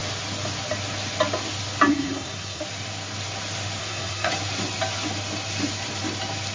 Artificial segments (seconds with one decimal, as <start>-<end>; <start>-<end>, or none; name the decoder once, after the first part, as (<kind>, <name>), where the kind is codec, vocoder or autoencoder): 1.9-2.6 (codec, SNAC); 3.8-4.3